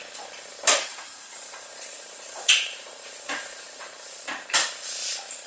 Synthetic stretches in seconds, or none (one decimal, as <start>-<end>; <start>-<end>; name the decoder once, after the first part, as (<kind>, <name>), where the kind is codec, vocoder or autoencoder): 0.9-4.2 (vocoder, Vocos)